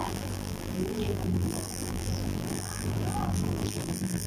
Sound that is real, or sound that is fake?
fake